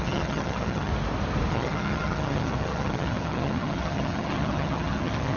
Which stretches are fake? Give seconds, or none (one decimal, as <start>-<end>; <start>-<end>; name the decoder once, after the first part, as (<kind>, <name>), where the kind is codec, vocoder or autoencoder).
0.0-0.9 (vocoder, HiFi-GAN); 1.5-5.4